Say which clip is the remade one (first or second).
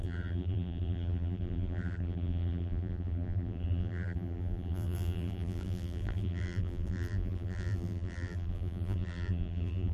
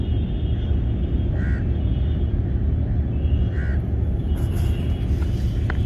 first